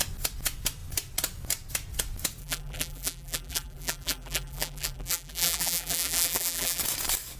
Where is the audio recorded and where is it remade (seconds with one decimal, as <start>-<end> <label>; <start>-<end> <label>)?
0.0-2.4 recorded; 2.4-6.8 remade; 6.8-7.4 recorded